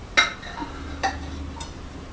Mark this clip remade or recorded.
recorded